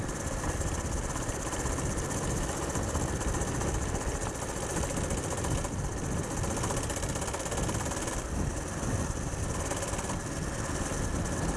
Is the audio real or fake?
real